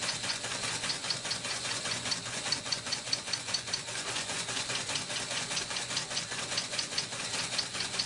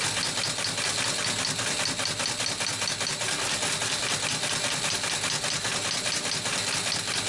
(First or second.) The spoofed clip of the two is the first